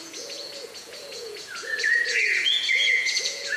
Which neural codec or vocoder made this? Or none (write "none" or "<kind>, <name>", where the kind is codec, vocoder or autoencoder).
vocoder, Vocos